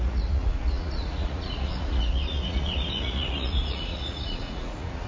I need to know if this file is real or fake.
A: fake